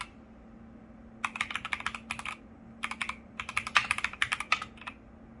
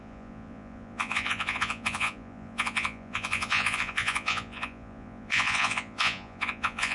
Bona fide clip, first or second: first